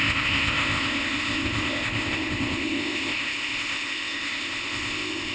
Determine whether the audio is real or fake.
fake